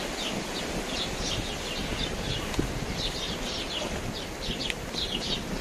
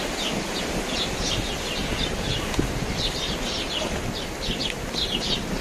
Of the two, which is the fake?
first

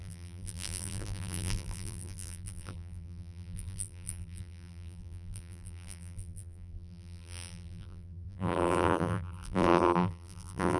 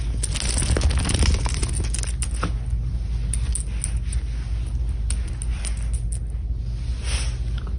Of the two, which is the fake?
first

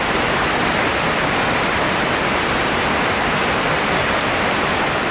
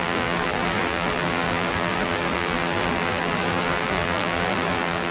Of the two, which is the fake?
second